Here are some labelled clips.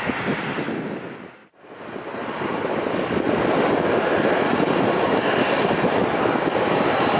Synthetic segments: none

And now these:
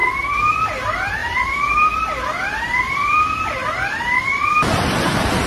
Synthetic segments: 0.6-5.5 (vocoder, BigVGAN v2)